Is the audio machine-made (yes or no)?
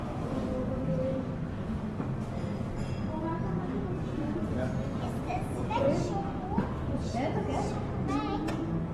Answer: no